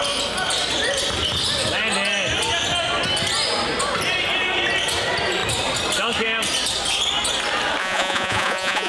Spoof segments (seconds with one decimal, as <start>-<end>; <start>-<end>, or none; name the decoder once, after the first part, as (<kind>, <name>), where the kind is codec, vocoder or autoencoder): 7.8-8.9 (vocoder, Vocos)